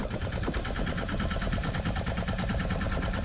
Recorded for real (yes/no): no